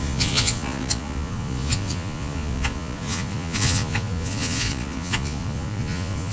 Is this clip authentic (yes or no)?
no